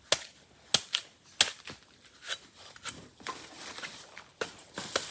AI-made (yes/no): no